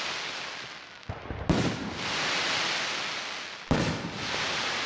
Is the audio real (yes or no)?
yes